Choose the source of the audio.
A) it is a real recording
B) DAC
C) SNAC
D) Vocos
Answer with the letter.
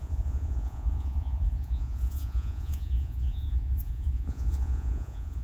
D